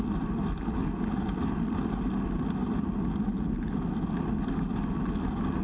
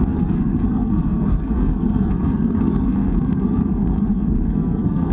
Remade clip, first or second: second